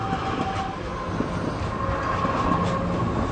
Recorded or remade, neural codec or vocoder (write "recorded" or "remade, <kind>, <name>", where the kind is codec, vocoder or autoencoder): recorded